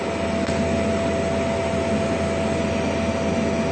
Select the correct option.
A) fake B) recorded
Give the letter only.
B